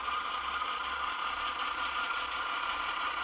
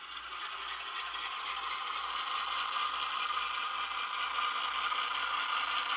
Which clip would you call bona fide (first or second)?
second